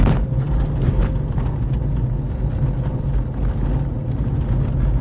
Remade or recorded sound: recorded